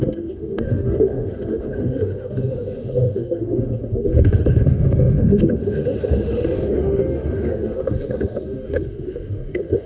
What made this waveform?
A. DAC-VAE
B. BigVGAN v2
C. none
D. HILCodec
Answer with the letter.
A